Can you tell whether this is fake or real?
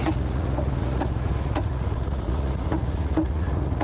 fake